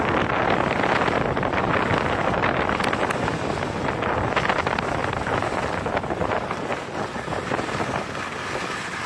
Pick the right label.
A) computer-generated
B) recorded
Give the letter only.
B